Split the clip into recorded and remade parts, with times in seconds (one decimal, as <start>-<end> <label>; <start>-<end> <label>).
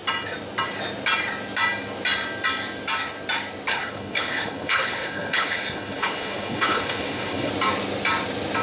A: 0.0-3.7 recorded; 3.7-7.5 remade; 7.5-8.6 recorded